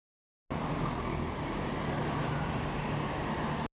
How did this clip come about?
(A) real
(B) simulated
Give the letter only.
A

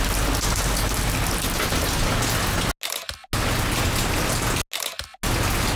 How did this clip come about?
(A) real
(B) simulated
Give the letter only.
A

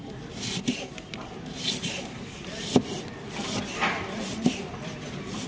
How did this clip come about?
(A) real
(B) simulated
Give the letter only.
A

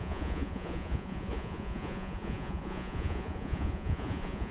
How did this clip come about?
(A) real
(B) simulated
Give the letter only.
B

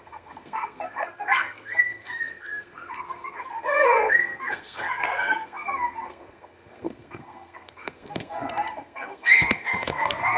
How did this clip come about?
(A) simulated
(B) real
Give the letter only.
A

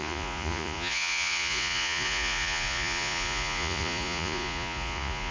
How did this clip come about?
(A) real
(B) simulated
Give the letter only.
B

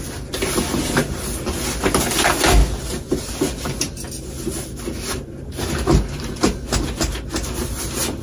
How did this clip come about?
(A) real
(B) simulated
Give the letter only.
A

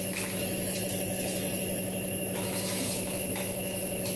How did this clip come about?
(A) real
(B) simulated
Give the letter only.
B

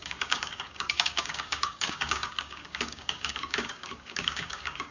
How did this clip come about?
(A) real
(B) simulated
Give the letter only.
B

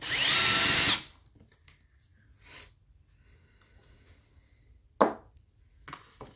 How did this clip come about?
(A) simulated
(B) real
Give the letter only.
B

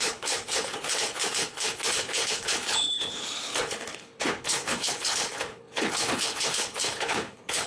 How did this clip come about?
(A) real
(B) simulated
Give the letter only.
B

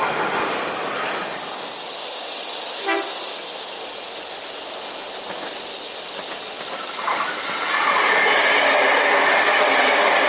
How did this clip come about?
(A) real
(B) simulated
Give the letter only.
A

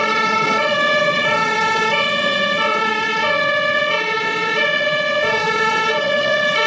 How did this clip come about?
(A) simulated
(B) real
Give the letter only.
A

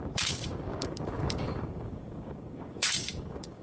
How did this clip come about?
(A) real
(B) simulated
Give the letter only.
B